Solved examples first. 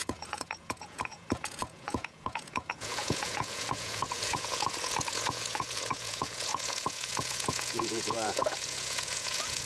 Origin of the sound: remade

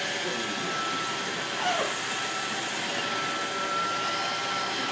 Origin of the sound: recorded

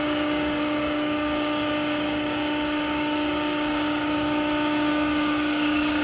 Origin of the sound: remade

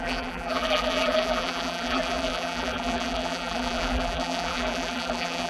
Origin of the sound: remade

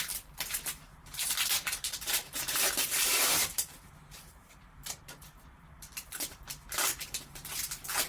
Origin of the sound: remade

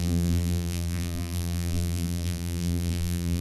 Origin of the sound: remade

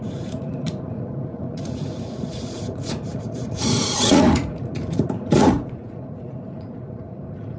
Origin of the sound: remade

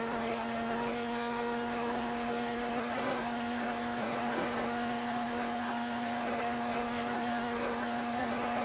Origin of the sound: remade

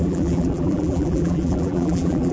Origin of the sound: remade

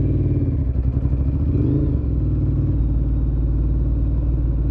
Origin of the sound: recorded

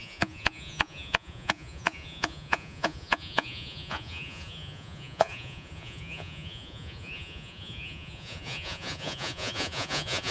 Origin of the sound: remade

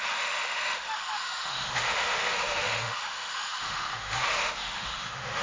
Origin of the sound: remade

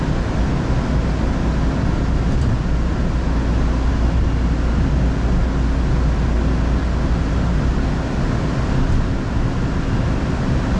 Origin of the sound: recorded